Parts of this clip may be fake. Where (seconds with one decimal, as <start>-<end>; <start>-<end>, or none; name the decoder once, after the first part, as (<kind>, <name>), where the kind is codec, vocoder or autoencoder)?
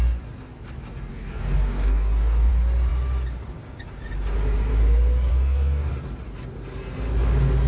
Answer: 1.1-2.5 (codec, DAC); 5.3-5.9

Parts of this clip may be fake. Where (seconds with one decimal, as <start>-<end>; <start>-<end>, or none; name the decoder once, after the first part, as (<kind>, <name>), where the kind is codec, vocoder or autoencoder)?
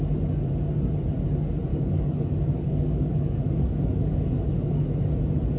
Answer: 1.7-5.1 (codec, DAC)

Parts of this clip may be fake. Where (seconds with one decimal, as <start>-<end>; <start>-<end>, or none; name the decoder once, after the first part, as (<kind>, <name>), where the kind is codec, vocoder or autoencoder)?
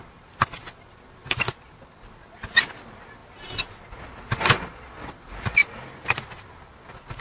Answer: none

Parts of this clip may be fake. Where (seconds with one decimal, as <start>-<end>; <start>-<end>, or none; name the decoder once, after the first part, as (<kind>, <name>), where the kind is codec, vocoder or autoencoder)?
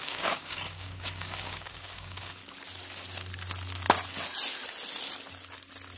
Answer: 0.0-2.4 (codec, DAC)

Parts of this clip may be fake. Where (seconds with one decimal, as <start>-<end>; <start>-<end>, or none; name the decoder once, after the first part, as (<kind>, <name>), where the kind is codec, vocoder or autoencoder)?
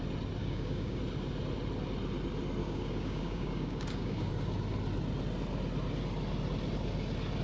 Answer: 0.4-1.0 (codec, DAC); 2.6-4.3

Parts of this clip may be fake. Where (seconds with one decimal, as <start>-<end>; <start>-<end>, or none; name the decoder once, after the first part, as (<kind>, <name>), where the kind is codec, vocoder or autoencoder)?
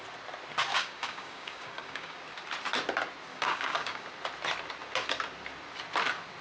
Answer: 0.7-2.2 (codec, DAC); 3.3-4.1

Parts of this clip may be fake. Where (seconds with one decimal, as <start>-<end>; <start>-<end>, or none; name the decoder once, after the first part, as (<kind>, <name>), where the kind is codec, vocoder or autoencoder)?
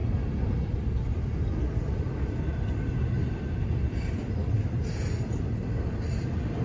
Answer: none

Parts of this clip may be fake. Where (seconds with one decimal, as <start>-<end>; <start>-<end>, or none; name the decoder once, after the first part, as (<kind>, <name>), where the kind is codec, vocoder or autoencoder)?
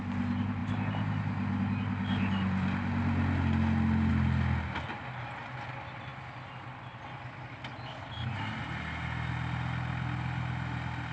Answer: none